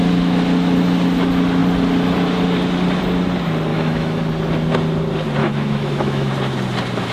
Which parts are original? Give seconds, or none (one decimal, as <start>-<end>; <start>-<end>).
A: 0.0-3.7; 4.2-5.4; 6.3-7.1